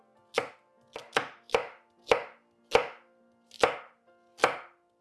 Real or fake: real